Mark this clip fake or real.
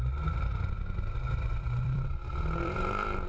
fake